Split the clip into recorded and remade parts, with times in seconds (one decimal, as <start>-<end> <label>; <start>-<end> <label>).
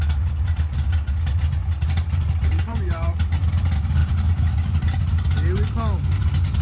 0.0-1.6 recorded; 1.6-3.5 remade; 3.5-4.0 recorded; 4.0-5.0 remade; 5.0-6.6 recorded